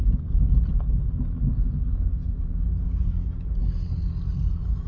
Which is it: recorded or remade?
recorded